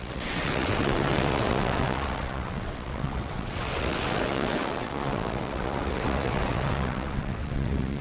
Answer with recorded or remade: remade